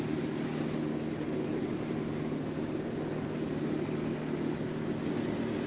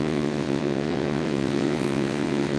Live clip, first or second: first